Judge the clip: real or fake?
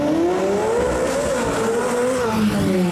real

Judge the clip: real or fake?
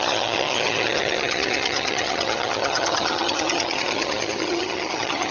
fake